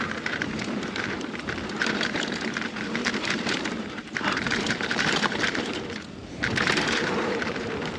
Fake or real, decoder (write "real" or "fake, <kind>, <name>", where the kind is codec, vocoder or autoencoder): fake, vocoder, BigVGAN v2